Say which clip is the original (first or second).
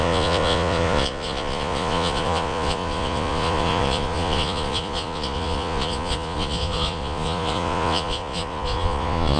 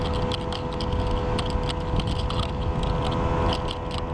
second